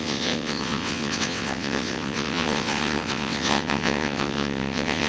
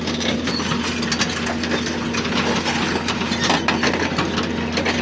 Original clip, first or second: second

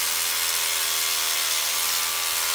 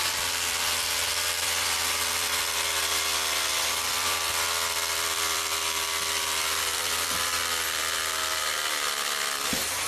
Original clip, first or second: first